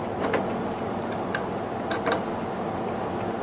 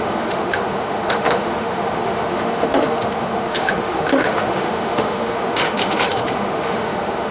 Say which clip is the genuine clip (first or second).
first